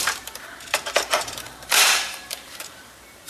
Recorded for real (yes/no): no